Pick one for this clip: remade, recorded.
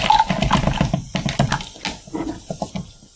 recorded